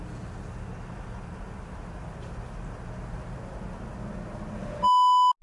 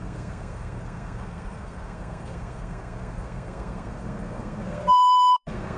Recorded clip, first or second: first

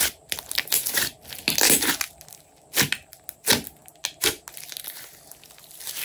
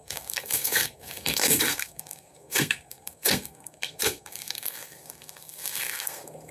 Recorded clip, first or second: first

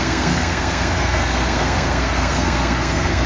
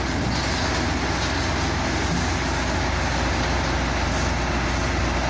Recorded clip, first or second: second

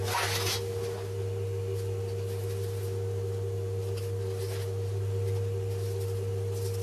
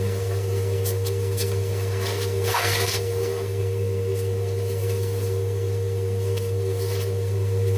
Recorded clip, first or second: first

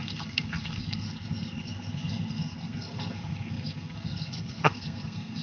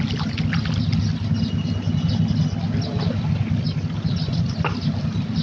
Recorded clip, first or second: second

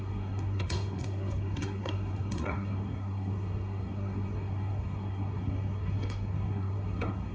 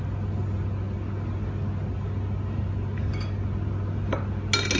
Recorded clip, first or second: second